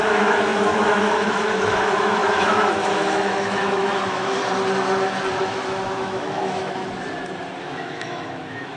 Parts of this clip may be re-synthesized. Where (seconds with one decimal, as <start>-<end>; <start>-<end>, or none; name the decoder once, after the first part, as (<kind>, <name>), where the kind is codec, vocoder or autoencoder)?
0.0-4.4 (autoencoder, DAC-VAE); 5.4-6.8; 7.6-8.8